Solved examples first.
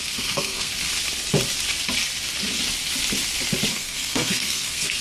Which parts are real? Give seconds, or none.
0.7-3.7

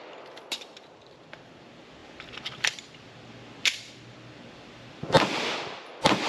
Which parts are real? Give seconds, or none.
none

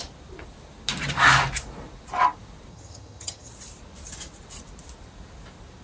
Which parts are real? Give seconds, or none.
0.0-2.7; 3.5-5.8

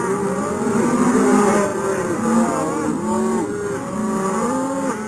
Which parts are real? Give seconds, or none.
0.0-5.1

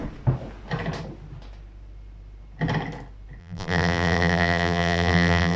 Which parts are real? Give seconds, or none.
0.0-3.4

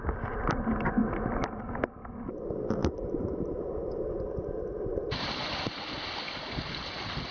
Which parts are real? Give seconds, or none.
0.0-7.3

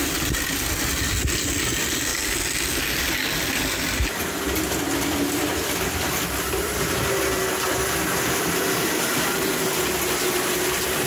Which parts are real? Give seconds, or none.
0.0-11.1

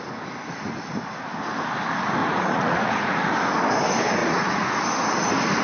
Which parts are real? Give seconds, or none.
0.0-2.2; 3.3-4.2; 4.8-5.6